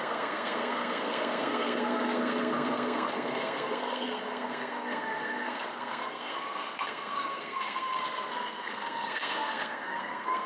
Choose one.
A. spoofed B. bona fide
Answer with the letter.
A